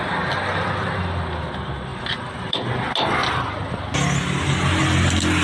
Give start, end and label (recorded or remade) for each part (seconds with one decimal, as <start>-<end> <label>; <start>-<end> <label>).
0.0-1.9 recorded; 1.9-2.7 remade; 2.7-3.2 recorded; 3.2-3.7 remade; 3.7-5.4 recorded